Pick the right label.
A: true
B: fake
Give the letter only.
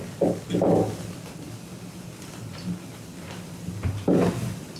A